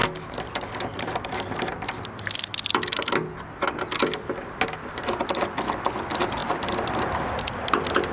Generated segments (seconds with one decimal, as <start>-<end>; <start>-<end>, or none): 4.9-8.1